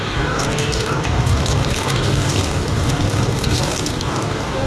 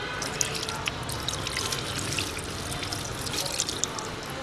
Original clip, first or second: second